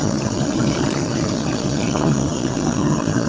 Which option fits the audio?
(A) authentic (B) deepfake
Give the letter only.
B